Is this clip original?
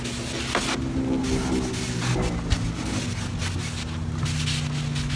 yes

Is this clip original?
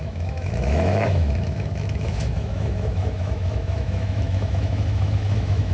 no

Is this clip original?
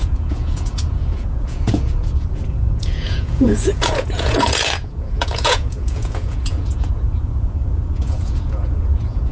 no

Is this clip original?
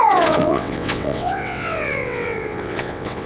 no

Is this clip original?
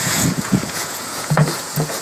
no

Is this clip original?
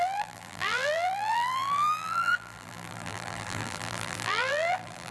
no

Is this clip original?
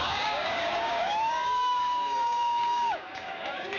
no